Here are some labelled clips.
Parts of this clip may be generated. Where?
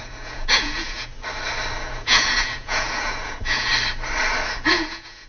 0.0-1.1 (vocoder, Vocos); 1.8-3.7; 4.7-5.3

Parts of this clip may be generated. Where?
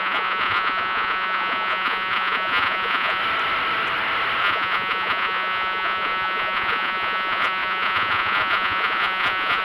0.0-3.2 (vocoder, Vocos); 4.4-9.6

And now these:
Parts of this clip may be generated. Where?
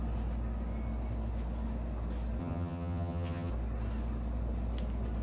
2.4-3.5 (vocoder, HiFi-GAN)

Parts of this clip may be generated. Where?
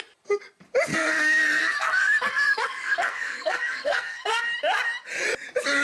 0.9-4.4 (codec, SNAC)